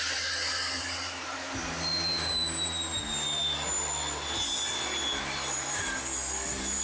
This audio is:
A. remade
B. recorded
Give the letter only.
B